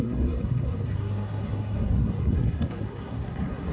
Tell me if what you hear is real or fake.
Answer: fake